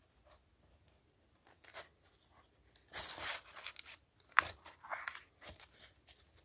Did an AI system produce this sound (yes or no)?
no